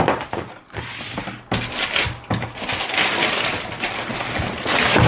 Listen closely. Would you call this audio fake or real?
real